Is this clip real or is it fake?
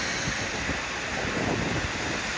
real